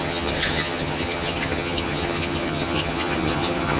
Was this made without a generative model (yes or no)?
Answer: no